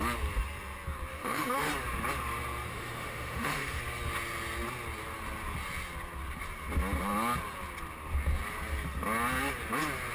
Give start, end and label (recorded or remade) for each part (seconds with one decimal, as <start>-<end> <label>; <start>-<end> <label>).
0.0-1.1 recorded; 1.1-1.7 remade; 1.7-2.7 recorded; 2.7-3.8 remade; 3.8-10.1 recorded